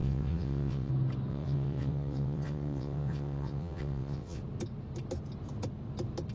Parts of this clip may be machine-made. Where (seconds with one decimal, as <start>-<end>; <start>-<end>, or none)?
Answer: 0.0-0.9; 1.3-4.4